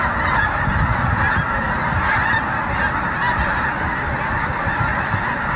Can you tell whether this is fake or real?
real